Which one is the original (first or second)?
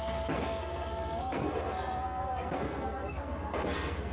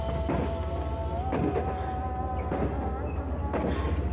second